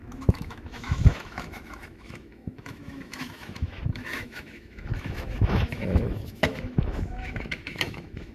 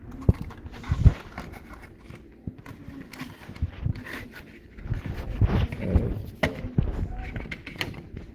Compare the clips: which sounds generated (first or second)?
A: first